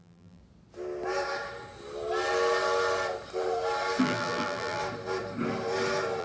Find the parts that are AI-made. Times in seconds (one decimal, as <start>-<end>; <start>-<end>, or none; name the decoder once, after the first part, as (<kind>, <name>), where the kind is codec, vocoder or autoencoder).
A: 0.0-0.4 (vocoder, BigVGAN v2); 4.0-4.8